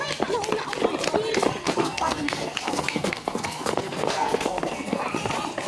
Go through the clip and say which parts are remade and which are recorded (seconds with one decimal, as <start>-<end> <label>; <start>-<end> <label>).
0.0-1.6 recorded; 1.6-5.0 remade; 5.0-5.7 recorded